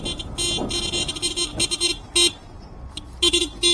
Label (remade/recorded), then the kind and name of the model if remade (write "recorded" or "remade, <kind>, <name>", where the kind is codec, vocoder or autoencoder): recorded